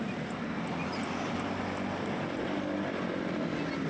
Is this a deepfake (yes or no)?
no